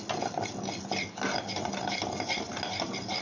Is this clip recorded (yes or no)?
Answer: yes